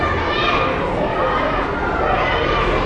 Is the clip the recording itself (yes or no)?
yes